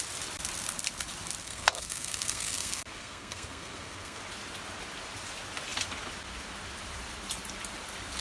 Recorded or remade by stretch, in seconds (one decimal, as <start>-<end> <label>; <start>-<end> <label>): 0.0-1.4 recorded; 1.4-4.2 remade; 4.2-8.2 recorded